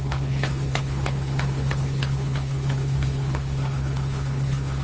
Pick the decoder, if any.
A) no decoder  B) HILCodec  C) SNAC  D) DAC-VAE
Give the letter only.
B